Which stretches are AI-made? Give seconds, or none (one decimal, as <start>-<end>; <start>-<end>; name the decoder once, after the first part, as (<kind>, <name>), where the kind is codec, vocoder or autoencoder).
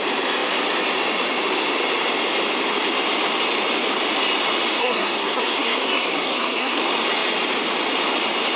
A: 4.8-6.8 (codec, SNAC)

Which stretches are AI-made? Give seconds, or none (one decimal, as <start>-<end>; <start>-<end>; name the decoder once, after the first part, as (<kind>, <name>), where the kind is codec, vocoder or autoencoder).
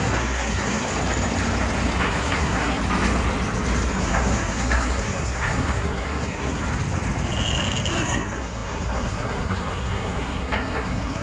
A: 0.0-0.9 (codec, SNAC); 2.0-2.8; 4.0-6.6; 7.9-11.2